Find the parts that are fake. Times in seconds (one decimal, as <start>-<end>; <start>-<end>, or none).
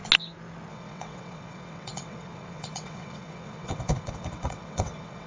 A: 0.7-5.3